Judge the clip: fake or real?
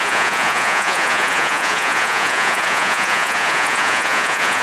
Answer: fake